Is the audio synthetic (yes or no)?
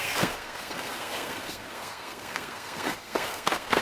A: yes